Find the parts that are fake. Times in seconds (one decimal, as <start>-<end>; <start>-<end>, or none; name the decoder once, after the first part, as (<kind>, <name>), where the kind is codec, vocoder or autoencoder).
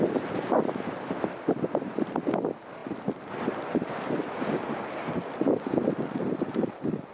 none